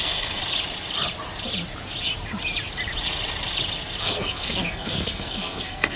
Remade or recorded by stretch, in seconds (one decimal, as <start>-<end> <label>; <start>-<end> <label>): 0.0-0.4 remade; 0.4-4.0 recorded; 4.0-6.0 remade